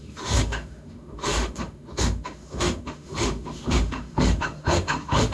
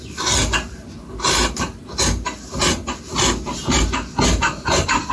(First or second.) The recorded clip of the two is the second